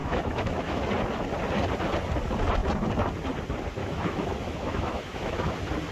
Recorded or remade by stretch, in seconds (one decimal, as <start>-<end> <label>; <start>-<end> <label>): 0.0-0.8 remade; 0.8-3.8 recorded; 3.8-5.5 remade; 5.5-5.9 recorded